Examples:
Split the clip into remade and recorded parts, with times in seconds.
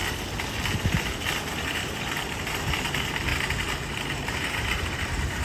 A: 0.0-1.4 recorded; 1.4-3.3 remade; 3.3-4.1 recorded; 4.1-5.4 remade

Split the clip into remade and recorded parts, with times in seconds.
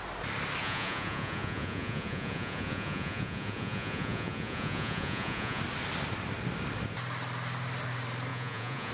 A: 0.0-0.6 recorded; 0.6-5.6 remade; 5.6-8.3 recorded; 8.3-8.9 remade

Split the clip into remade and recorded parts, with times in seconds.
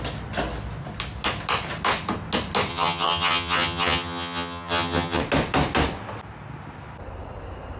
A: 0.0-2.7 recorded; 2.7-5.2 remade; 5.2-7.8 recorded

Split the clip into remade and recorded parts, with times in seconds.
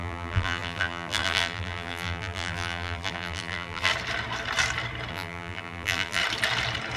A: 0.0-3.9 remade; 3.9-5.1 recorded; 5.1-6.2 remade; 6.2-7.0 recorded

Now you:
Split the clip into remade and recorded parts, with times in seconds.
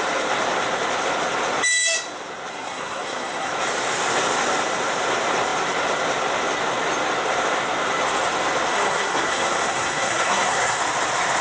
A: 0.0-2.5 recorded; 2.5-3.5 remade; 3.5-8.7 recorded; 8.7-10.8 remade; 10.8-11.4 recorded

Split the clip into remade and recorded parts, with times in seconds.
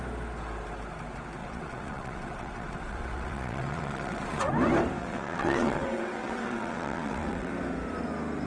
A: 0.0-1.4 recorded; 1.4-4.5 remade; 4.5-5.0 recorded; 5.0-7.5 remade; 7.5-8.5 recorded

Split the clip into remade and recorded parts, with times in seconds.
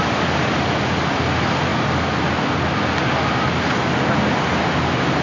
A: 0.0-5.2 recorded